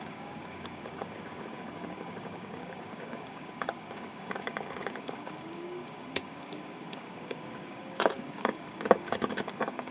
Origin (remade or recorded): remade